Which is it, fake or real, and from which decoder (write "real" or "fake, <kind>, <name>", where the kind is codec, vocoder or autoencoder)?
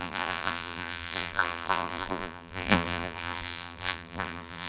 fake, vocoder, BigVGAN v2